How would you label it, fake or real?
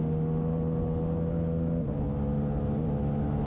real